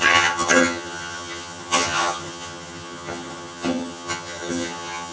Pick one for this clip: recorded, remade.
remade